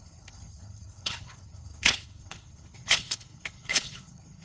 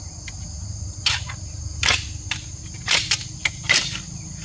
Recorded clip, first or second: second